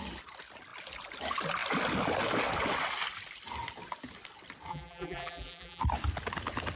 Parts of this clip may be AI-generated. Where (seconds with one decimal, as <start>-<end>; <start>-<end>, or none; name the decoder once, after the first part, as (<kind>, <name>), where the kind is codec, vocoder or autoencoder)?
4.7-5.8 (vocoder, BigVGAN v2)